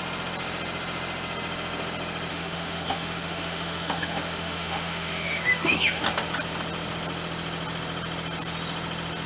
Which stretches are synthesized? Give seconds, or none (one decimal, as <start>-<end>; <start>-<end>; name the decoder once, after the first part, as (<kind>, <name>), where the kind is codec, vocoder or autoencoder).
2.3-6.0 (autoencoder, DAC-VAE)